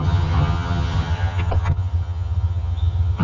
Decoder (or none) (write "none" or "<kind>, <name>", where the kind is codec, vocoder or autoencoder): vocoder, HiFi-GAN